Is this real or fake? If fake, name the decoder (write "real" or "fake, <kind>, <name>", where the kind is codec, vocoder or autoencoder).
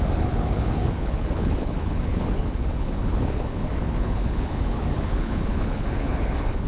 fake, codec, HILCodec